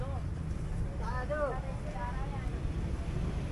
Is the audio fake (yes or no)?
no